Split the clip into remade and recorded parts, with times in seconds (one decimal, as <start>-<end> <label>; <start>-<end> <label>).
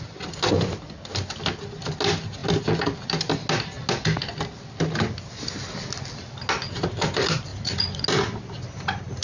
0.0-7.5 recorded; 7.5-8.0 remade; 8.0-9.2 recorded